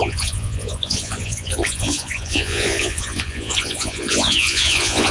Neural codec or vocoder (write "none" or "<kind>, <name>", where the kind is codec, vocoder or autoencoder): vocoder, Vocos